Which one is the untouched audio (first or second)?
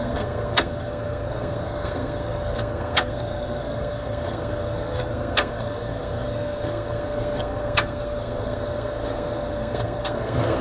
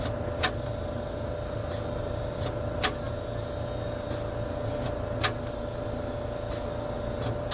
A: second